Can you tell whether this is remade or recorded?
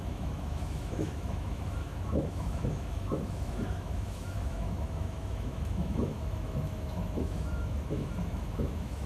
remade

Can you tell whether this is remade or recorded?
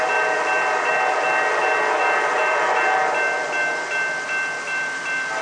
recorded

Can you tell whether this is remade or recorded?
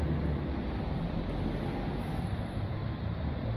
remade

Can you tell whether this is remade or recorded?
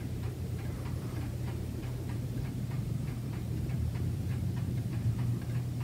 remade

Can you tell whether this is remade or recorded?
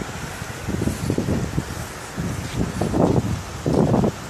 recorded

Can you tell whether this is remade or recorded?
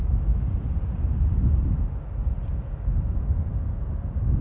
recorded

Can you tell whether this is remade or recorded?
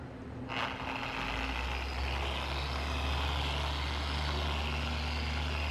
recorded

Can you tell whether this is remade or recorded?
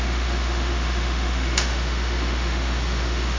remade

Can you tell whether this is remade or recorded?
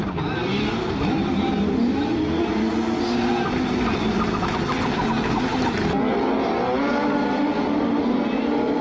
recorded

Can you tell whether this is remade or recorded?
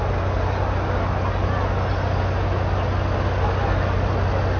recorded